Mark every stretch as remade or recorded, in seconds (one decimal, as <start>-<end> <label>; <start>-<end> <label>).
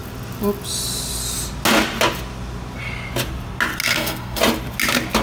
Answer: 0.0-3.8 recorded; 3.8-4.4 remade; 4.4-5.2 recorded